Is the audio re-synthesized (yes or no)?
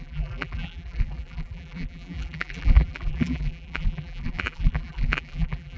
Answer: yes